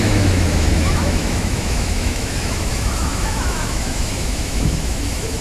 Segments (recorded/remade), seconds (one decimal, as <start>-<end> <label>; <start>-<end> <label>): 0.0-5.4 remade